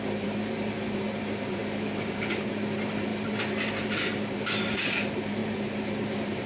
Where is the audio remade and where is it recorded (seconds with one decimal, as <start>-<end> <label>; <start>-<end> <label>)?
0.0-6.5 remade

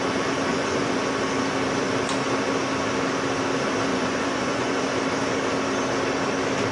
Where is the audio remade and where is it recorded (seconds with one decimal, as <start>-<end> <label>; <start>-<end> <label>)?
0.0-0.5 recorded; 0.5-1.0 remade; 1.0-3.9 recorded; 3.9-5.0 remade; 5.0-6.7 recorded

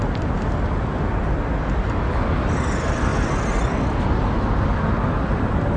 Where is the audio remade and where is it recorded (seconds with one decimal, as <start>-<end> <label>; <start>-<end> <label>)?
0.0-5.8 recorded

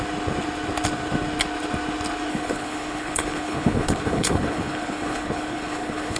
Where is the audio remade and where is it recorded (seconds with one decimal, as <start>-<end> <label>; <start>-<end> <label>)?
0.0-2.3 recorded; 2.3-6.2 remade

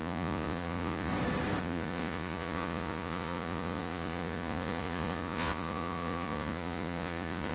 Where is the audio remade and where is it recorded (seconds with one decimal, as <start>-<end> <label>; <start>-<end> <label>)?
0.0-1.1 remade; 1.1-1.6 recorded; 1.6-7.5 remade

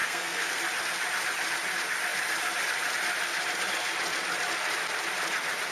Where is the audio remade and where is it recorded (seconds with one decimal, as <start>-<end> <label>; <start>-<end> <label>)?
0.0-0.6 remade; 0.6-5.7 recorded